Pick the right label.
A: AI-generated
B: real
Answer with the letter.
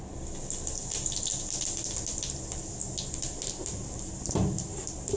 B